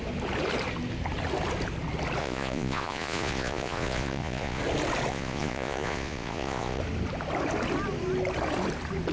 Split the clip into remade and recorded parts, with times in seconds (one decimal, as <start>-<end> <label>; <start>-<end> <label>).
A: 0.0-2.2 recorded; 2.2-4.6 remade; 4.6-5.1 recorded; 5.1-6.8 remade; 6.8-9.1 recorded